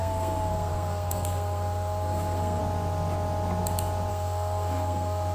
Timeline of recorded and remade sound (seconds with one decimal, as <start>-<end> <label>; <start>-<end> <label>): 0.0-2.6 remade; 2.6-4.1 recorded; 4.1-5.3 remade